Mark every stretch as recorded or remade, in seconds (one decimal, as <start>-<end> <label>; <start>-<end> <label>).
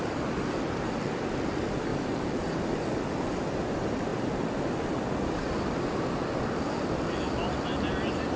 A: 0.0-1.9 recorded; 1.9-2.6 remade; 2.6-8.4 recorded